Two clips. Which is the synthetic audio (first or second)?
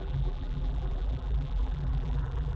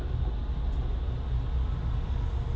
first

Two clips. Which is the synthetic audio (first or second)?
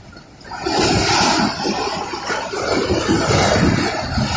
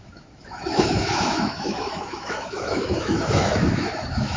second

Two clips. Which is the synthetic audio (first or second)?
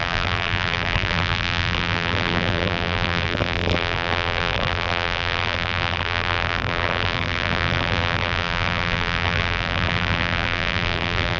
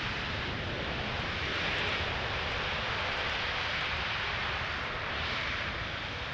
first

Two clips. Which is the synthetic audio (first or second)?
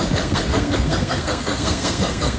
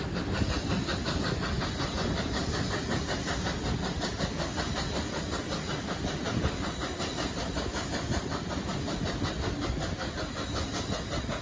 first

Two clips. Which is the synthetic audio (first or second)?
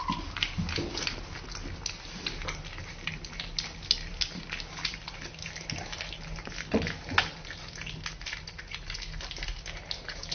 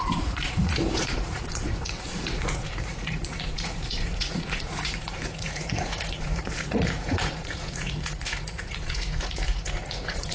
second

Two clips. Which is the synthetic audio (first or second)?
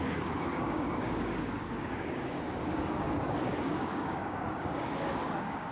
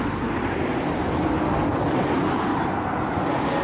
first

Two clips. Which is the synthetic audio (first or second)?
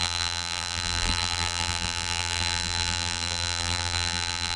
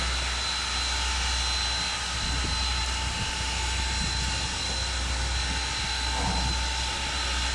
first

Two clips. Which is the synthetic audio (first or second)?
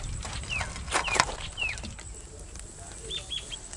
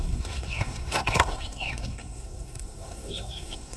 second